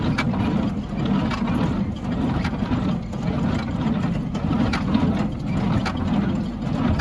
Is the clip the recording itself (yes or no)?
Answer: yes